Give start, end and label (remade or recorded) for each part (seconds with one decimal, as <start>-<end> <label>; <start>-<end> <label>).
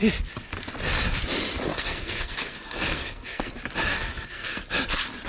0.0-1.7 recorded; 1.7-3.5 remade; 3.5-3.9 recorded; 3.9-4.6 remade; 4.6-5.3 recorded